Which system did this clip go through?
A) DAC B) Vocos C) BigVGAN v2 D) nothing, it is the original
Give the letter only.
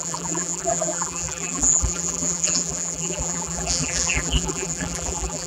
C